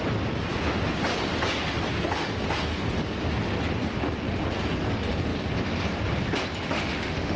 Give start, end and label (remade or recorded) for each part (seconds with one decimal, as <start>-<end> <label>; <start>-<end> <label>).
0.0-6.6 recorded; 6.6-7.4 remade